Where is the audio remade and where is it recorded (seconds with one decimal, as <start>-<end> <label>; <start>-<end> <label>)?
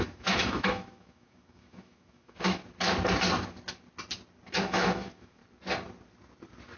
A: 0.0-2.6 remade; 2.6-4.6 recorded; 4.6-5.4 remade; 5.4-6.8 recorded